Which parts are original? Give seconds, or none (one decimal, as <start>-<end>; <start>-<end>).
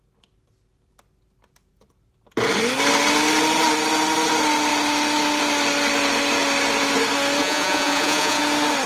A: 0.0-7.4; 8.4-8.9